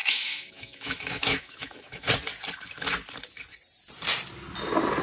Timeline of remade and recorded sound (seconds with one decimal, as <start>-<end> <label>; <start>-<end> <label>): 0.0-2.1 remade; 2.1-5.0 recorded